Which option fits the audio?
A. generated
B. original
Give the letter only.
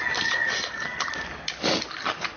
B